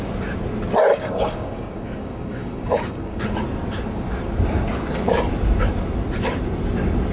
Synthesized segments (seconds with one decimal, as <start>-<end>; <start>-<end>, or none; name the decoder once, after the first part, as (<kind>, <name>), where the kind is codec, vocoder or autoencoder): 0.9-3.2 (codec, DAC)